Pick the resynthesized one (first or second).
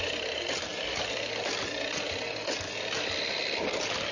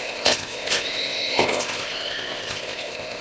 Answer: second